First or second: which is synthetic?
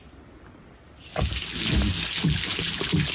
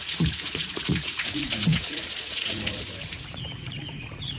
second